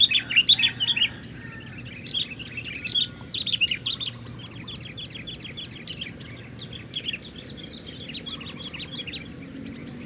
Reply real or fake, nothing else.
real